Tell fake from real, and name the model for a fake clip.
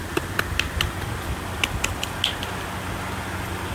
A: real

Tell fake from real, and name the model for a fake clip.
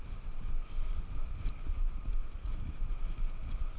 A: fake, vocoder, BigVGAN v2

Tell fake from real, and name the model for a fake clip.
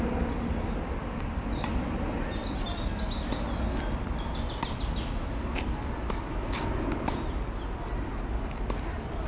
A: real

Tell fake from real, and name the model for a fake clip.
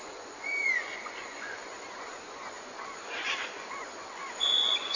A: fake, vocoder, Vocos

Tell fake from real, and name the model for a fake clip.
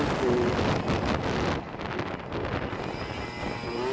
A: real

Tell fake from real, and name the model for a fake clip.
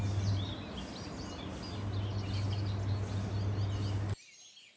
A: real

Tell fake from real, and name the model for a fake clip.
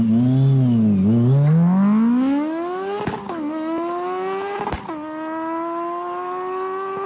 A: real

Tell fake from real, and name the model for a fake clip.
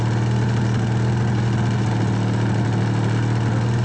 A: real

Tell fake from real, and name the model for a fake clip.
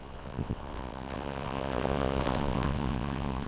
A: fake, vocoder, WaveNeXt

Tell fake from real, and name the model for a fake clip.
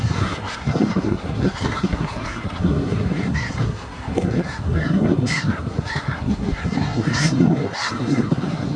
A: fake, codec, SNAC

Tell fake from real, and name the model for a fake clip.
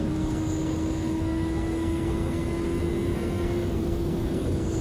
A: fake, codec, SNAC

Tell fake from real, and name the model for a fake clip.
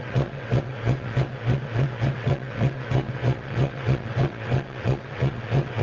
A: fake, vocoder, WaveNeXt